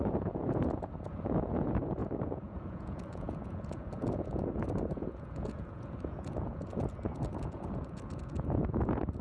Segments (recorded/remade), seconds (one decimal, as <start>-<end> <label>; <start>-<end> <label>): 0.0-9.2 remade